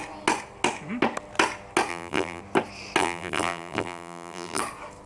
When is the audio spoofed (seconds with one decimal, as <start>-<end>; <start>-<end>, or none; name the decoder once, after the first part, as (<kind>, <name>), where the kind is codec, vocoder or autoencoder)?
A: 1.9-2.4 (vocoder, BigVGAN v2); 3.0-4.6